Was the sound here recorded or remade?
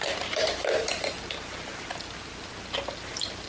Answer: recorded